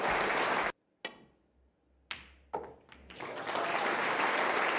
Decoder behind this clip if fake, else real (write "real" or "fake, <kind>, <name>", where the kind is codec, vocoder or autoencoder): real